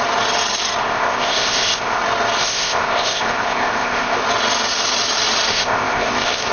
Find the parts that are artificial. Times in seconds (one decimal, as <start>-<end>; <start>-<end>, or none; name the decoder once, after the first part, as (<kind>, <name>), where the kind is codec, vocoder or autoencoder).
0.8-2.0 (codec, ZipCodec); 2.4-4.2; 5.5-6.5